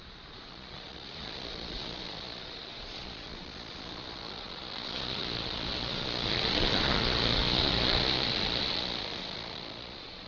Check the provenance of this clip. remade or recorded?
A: remade